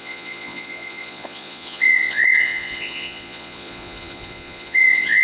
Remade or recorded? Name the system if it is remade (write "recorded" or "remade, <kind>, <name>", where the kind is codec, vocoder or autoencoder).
remade, vocoder, Vocos